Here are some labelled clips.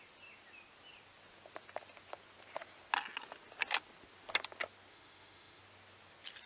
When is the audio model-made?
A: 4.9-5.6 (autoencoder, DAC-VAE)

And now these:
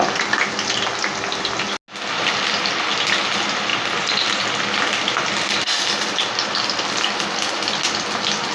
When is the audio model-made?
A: none

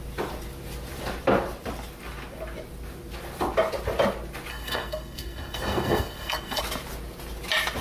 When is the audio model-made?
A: 4.5-6.6 (codec, SNAC)

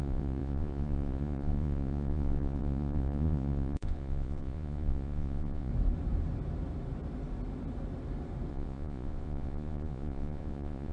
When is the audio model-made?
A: 0.0-5.7 (vocoder, Vocos); 8.5-10.9